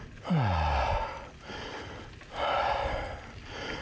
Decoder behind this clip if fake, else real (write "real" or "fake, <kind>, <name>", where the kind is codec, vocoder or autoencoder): real